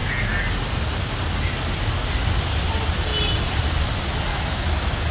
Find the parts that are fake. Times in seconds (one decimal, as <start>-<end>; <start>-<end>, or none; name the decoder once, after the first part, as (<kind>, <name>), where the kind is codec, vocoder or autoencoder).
4.3-5.1 (autoencoder, DAC-VAE)